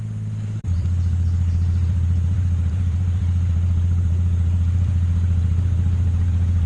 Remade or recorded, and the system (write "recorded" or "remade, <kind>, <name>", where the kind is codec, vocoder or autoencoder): remade, vocoder, BigVGAN v2